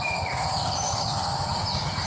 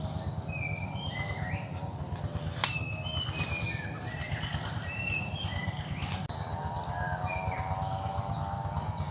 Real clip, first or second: second